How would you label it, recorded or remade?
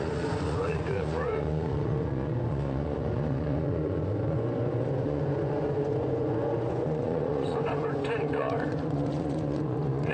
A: remade